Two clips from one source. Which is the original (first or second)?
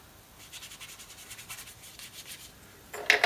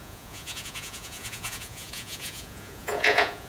first